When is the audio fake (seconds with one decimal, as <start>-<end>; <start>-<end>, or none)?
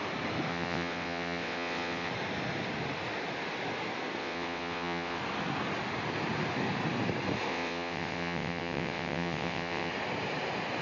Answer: 0.5-2.1; 4.2-5.2; 7.5-9.9